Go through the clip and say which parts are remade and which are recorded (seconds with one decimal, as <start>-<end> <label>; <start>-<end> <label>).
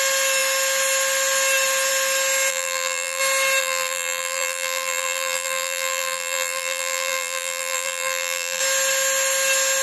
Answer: 0.0-2.5 recorded; 2.5-3.2 remade; 3.2-3.6 recorded; 3.6-8.6 remade; 8.6-9.8 recorded